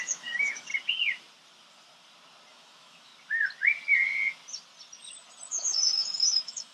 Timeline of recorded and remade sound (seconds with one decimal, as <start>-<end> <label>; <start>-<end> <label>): 0.0-0.7 remade; 0.7-2.5 recorded; 2.5-3.1 remade; 3.1-5.5 recorded; 5.5-6.7 remade